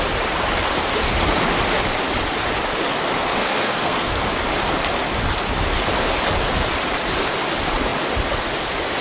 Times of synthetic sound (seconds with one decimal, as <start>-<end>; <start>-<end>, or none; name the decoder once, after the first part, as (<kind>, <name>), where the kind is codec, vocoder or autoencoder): 3.2-4.2 (codec, SNAC)